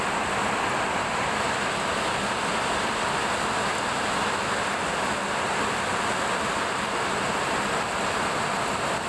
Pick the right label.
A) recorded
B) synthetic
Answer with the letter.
A